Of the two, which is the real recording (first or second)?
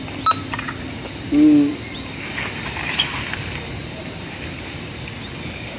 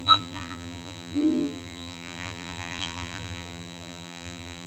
first